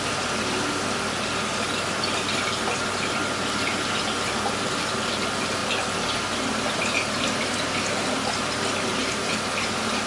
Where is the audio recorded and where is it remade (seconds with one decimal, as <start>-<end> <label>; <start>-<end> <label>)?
0.0-10.1 recorded